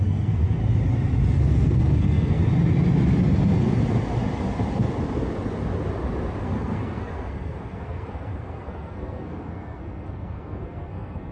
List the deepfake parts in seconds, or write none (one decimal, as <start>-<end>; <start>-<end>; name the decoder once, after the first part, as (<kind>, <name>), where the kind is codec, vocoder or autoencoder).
0.0-0.6 (codec, SNAC); 1.4-2.4; 6.4-11.3